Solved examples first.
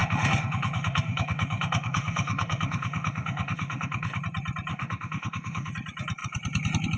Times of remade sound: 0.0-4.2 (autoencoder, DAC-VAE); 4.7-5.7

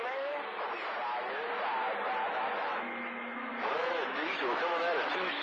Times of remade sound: 0.0-0.5 (autoencoder, DAC-VAE); 2.3-5.4

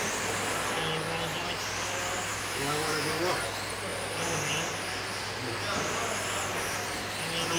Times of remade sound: 2.3-3.1 (autoencoder, DAC-VAE)

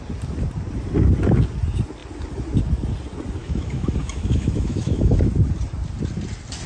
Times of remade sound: 3.4-5.3 (autoencoder, DAC-VAE)